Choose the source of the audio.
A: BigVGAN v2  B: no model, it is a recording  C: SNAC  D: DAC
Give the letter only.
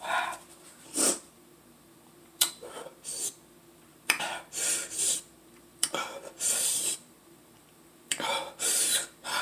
A